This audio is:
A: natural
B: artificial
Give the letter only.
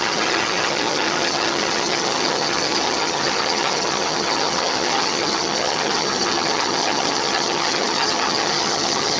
B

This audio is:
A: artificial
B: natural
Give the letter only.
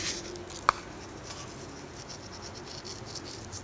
B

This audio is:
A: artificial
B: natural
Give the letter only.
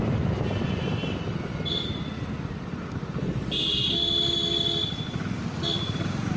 B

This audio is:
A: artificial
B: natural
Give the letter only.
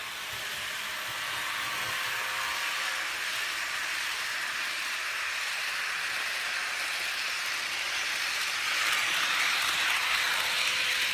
B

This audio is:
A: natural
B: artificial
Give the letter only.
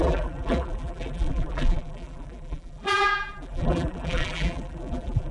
B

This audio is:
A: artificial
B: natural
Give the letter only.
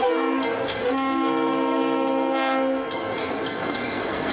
A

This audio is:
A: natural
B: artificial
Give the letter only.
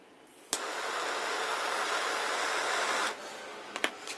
A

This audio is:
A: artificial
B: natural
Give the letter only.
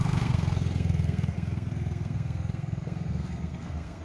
A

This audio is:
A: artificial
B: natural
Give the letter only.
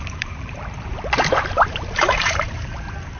A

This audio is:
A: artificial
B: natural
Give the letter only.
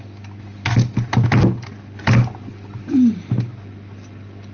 B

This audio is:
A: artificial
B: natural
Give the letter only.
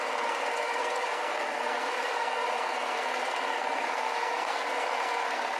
A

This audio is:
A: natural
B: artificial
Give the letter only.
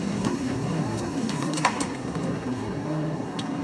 B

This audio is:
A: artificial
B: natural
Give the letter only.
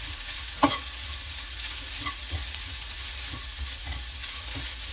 A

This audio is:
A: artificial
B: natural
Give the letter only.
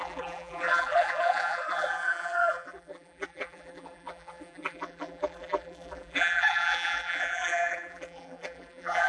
A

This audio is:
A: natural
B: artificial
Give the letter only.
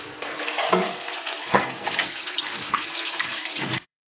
B